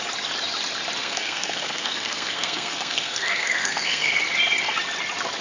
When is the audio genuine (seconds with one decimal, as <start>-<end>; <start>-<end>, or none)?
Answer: 0.0-1.0; 4.2-5.4

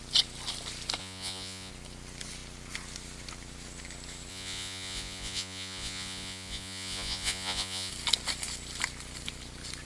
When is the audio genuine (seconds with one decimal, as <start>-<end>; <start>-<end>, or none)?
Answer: 0.0-1.0; 1.7-4.3; 7.9-9.8

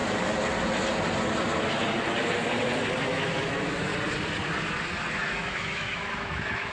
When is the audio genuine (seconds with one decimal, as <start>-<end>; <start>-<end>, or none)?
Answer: 0.0-3.0; 3.9-5.1

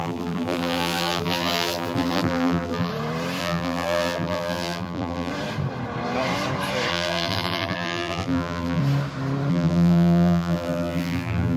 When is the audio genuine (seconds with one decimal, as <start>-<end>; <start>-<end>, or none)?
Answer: 2.9-3.4; 5.3-6.9; 8.8-9.5

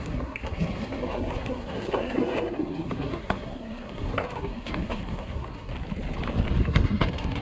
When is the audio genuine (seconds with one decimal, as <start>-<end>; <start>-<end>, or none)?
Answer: 5.7-6.6

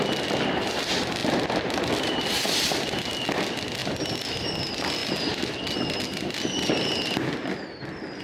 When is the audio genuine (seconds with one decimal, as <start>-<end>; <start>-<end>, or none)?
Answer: 0.0-1.2; 2.2-3.8; 4.4-8.2